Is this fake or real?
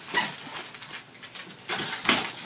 real